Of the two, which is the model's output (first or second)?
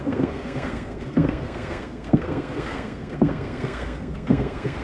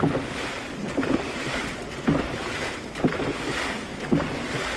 first